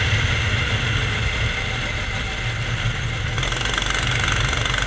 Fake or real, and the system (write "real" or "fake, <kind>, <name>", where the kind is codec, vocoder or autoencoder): real